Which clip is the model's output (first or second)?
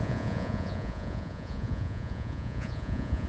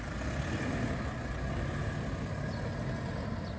first